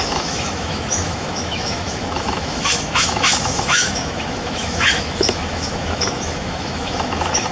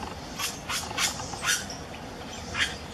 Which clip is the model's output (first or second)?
first